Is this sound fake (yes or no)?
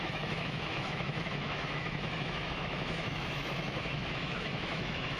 yes